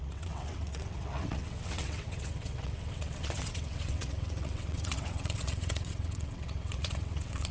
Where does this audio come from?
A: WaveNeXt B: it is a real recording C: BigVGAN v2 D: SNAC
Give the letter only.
A